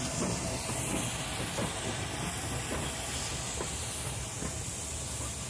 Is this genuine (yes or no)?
yes